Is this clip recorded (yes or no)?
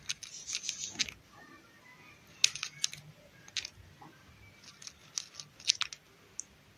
yes